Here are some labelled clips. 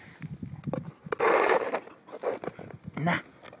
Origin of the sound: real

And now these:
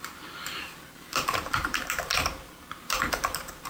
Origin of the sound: fake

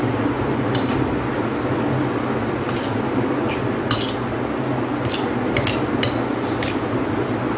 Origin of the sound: real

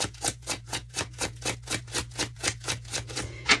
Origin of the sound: fake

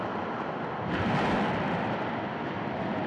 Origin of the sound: real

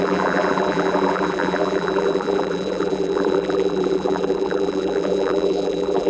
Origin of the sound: fake